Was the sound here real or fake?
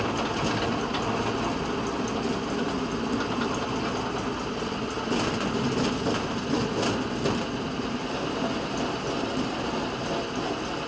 real